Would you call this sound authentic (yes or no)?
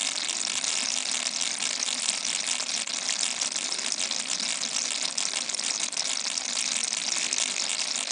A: yes